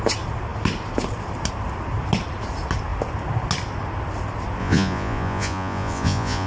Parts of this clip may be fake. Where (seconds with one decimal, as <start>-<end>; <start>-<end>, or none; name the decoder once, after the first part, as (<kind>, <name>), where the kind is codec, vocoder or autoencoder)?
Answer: 4.6-6.5 (vocoder, Vocos)